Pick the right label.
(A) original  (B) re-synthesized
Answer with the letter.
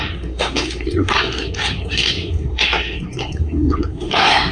B